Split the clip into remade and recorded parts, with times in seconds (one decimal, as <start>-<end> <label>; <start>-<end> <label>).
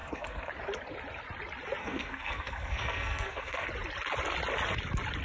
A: 0.0-0.5 remade; 0.5-1.8 recorded; 1.8-3.7 remade; 3.7-5.2 recorded